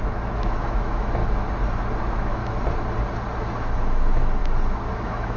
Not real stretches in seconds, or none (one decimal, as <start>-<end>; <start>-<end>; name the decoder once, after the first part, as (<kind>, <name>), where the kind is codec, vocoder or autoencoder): 0.0-1.2 (autoencoder, DAC-VAE); 2.0-2.4; 3.6-4.4; 4.9-5.4